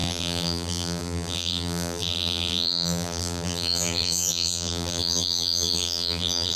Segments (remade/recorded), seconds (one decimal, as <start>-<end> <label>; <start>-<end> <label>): 0.0-6.6 remade

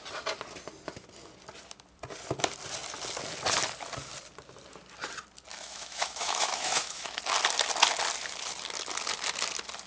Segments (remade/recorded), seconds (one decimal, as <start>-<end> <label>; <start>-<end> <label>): 0.0-5.5 recorded; 5.5-7.2 remade; 7.2-9.9 recorded

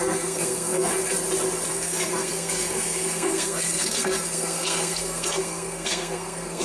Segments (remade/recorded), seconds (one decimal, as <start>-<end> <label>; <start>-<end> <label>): 0.0-0.9 remade; 0.9-1.7 recorded; 1.7-6.6 remade